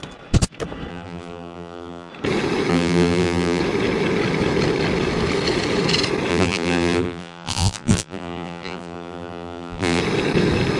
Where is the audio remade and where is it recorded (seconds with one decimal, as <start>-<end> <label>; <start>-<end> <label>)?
0.0-0.9 recorded; 0.9-2.1 remade; 2.1-2.7 recorded; 2.7-3.6 remade; 3.6-6.3 recorded; 6.3-10.0 remade; 10.0-10.8 recorded